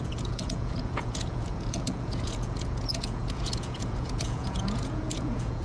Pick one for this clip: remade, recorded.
remade